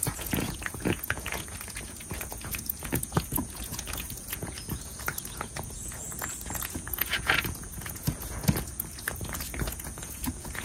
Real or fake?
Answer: fake